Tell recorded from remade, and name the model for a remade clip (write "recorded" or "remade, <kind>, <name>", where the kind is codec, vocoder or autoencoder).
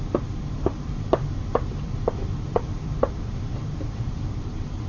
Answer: remade, vocoder, BigVGAN v2